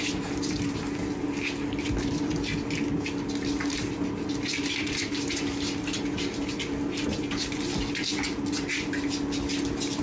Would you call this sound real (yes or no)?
yes